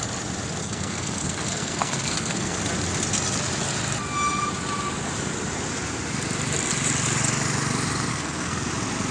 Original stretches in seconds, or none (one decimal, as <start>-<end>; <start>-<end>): 0.0-0.6; 2.6-8.1; 8.7-9.1